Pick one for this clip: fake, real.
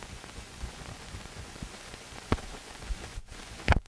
fake